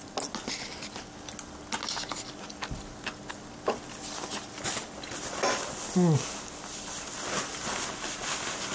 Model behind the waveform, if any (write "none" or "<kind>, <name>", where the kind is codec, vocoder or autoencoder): none